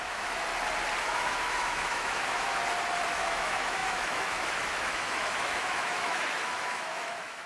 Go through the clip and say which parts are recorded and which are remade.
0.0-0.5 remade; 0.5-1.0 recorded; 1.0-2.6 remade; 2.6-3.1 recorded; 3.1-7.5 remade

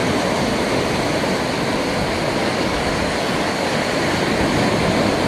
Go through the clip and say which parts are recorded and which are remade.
0.0-2.4 recorded; 2.4-3.7 remade; 3.7-5.3 recorded

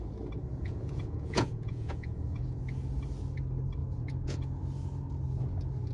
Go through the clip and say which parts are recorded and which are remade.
0.0-0.5 recorded; 0.5-2.6 remade; 2.6-3.8 recorded; 3.8-4.6 remade; 4.6-5.9 recorded

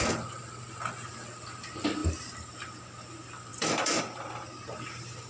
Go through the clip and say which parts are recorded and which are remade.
0.0-2.0 recorded; 2.0-2.7 remade; 2.7-3.5 recorded; 3.5-4.0 remade; 4.0-5.3 recorded

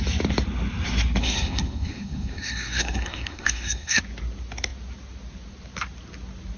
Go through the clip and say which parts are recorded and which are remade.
0.0-1.2 recorded; 1.2-4.0 remade; 4.0-6.6 recorded

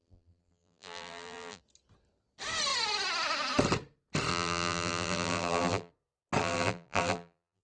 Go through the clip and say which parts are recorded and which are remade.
0.0-1.6 remade; 1.6-4.3 recorded; 4.3-5.9 remade; 5.9-6.4 recorded; 6.4-7.6 remade